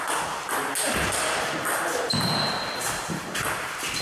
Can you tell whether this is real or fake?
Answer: real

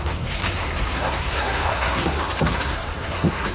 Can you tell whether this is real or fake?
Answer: fake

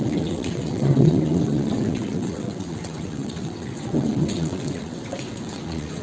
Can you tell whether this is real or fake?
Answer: fake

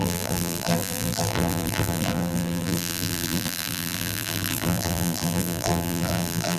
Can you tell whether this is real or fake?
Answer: fake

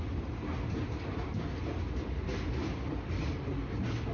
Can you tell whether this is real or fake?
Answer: real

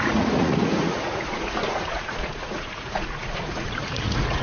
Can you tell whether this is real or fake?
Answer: fake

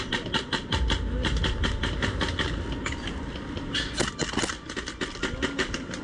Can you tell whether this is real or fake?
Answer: real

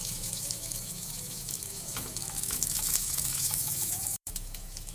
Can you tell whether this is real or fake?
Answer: fake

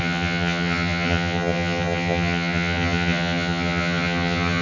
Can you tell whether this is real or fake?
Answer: fake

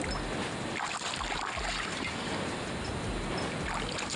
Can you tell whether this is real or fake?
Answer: real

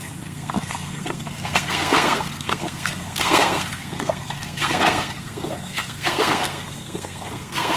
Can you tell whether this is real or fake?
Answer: fake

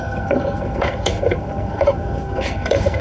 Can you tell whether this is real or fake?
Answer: fake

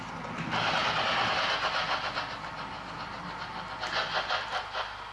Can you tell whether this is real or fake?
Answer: real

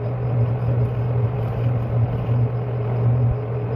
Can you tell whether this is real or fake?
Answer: real